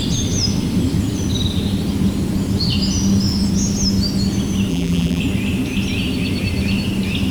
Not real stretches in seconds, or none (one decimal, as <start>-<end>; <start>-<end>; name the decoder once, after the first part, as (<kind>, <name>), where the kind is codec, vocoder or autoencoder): 4.7-5.2 (vocoder, BigVGAN v2)